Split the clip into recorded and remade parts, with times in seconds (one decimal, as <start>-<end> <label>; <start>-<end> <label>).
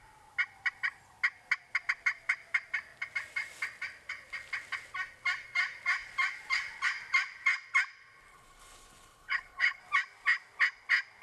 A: 0.0-8.3 recorded; 8.3-9.8 remade; 9.8-11.2 recorded